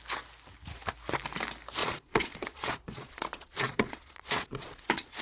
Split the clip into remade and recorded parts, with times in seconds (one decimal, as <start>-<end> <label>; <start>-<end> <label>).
0.0-1.8 recorded; 1.8-5.2 remade